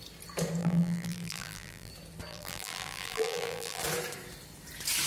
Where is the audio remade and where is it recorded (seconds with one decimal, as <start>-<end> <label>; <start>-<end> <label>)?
0.0-0.6 recorded; 0.6-1.9 remade; 1.9-2.3 recorded; 2.3-3.8 remade; 3.8-5.1 recorded